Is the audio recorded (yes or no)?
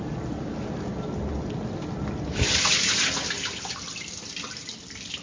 yes